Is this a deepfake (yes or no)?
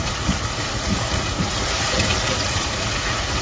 yes